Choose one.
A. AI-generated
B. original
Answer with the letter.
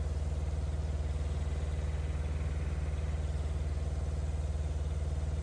B